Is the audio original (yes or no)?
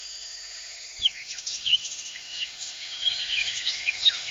no